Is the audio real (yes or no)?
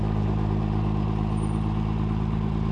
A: no